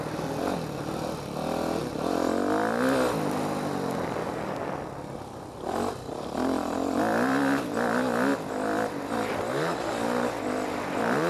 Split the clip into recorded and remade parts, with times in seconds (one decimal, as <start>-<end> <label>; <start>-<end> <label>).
0.0-4.2 recorded; 4.2-4.7 remade; 4.7-11.3 recorded